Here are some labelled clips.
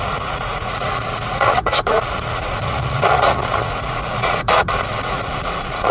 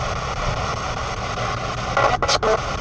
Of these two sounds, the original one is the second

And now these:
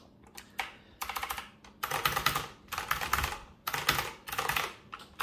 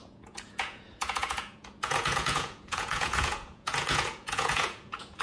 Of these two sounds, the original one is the first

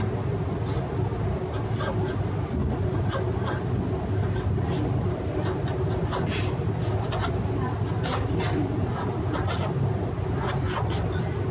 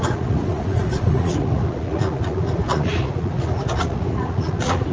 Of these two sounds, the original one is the first